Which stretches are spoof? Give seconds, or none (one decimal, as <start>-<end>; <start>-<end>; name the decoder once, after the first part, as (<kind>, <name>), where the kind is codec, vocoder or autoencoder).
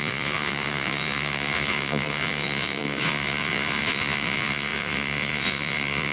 0.0-6.1 (vocoder, Vocos)